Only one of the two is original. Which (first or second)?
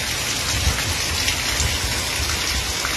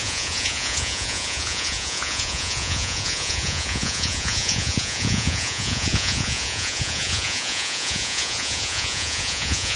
first